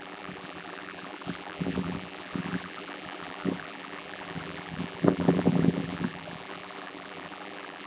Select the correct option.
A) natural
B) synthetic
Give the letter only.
B